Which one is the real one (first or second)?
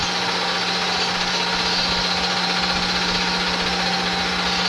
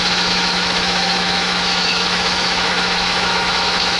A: first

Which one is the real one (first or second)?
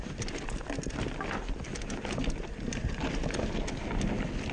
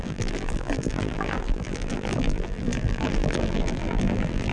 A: first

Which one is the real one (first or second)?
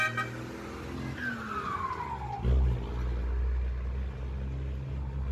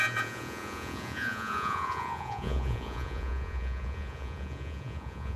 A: first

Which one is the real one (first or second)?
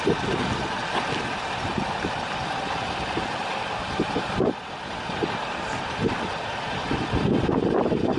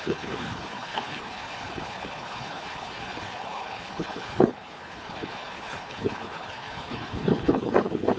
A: first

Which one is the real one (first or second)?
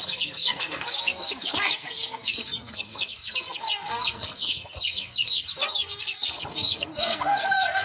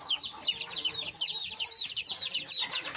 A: second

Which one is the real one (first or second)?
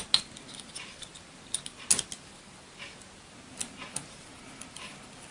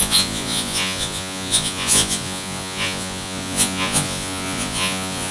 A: first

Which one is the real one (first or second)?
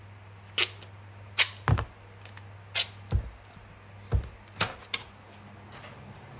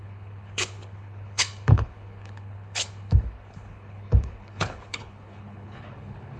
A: first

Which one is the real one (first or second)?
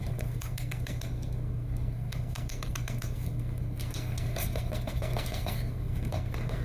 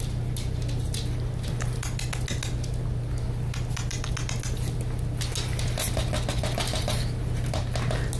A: second